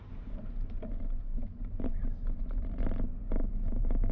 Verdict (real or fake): fake